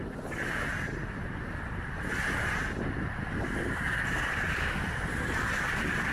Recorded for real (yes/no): yes